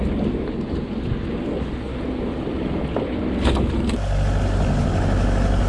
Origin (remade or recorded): recorded